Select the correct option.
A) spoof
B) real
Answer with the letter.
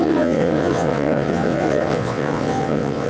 A